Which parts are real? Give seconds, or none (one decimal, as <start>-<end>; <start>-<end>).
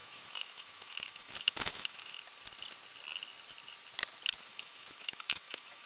2.2-4.5